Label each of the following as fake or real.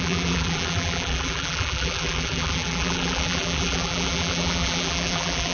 fake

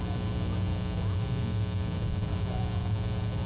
real